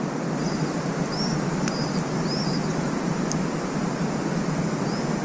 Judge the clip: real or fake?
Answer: real